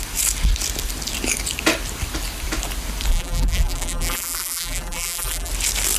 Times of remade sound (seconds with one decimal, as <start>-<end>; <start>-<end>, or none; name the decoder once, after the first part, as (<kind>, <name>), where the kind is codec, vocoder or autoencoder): 3.1-5.5 (vocoder, BigVGAN v2)